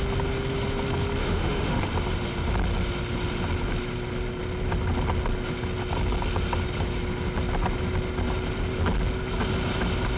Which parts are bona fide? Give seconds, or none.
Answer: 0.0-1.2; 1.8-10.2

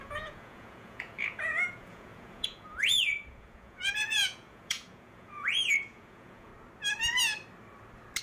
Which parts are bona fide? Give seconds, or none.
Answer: 6.5-8.2

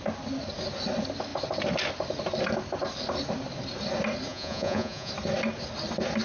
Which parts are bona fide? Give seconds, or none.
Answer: 0.0-4.3; 5.1-6.2

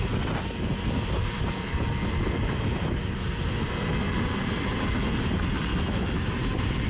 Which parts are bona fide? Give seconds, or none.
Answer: 0.0-5.7; 6.3-6.9

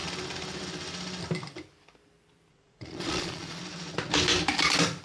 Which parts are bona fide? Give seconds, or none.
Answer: 0.0-2.5; 3.6-5.0

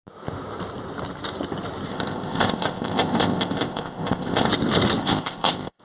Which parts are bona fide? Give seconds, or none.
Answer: 0.0-1.9; 4.5-5.0